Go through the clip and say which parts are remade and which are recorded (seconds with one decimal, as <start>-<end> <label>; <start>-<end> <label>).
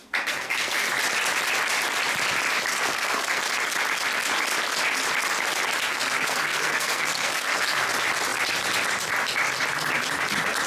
0.0-0.9 remade; 0.9-2.7 recorded; 2.7-3.4 remade; 3.4-5.9 recorded; 5.9-7.9 remade; 7.9-10.7 recorded